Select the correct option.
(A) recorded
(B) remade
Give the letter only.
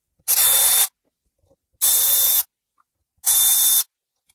A